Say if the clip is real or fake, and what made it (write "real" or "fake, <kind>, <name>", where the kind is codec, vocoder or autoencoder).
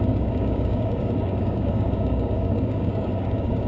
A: fake, codec, DAC